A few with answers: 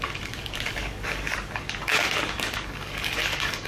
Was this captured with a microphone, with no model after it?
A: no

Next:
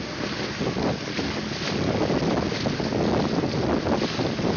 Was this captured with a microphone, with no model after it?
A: yes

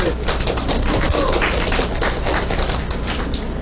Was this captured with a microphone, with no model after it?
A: yes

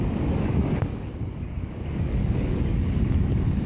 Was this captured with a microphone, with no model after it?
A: no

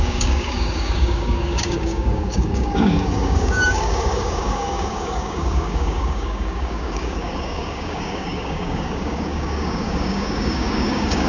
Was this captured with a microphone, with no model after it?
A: no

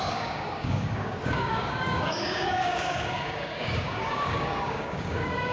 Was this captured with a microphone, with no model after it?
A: no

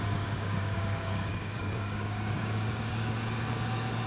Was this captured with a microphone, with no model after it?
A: no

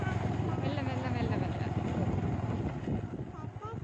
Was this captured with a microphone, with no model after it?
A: yes